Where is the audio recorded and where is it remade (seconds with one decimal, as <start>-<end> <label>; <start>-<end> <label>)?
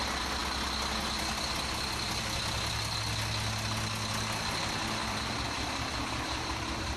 0.0-5.0 recorded; 5.0-7.0 remade